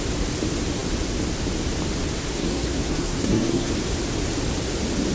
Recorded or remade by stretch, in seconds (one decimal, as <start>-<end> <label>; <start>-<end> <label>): 0.0-2.4 recorded; 2.4-3.7 remade; 3.7-5.1 recorded